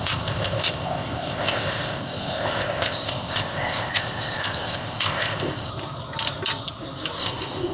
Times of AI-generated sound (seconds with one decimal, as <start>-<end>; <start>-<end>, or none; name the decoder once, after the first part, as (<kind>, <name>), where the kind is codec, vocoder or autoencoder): 0.0-5.7 (codec, ZipCodec); 7.2-7.7